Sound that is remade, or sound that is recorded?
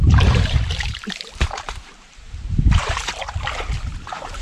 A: remade